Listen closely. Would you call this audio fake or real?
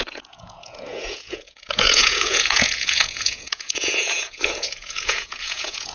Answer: fake